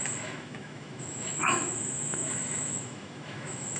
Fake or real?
fake